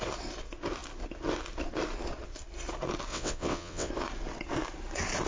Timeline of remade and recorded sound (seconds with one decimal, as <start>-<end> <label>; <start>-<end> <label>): 0.0-3.1 recorded; 3.1-3.9 remade; 3.9-5.3 recorded